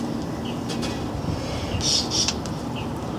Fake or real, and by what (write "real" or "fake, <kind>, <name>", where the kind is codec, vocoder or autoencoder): real